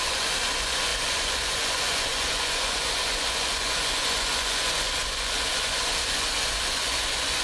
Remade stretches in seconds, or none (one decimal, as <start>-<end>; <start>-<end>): 0.0-7.4